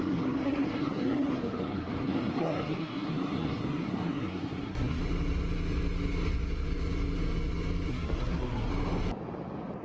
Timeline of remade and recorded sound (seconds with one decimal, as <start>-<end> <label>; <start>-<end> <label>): 0.0-5.0 remade; 5.0-7.9 recorded; 7.9-8.7 remade; 8.7-9.8 recorded